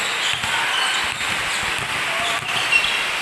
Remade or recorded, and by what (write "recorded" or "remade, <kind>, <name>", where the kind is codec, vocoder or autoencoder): recorded